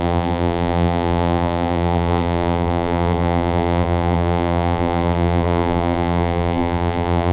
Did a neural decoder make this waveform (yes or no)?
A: yes